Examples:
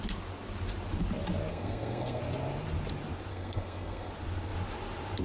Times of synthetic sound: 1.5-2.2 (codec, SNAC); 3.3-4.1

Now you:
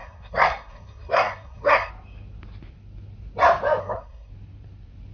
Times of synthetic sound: 0.0-1.9 (codec, SNAC); 3.8-4.3

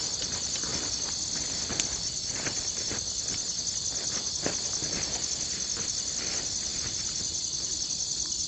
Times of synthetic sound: none

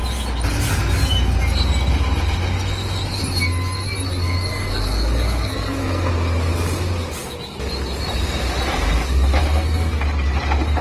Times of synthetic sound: 4.5-6.1 (codec, SNAC); 9.4-10.0

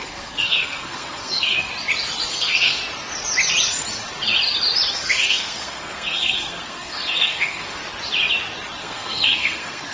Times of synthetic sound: 0.0-1.7 (codec, SNAC); 2.3-2.8; 4.9-7.8; 8.8-9.9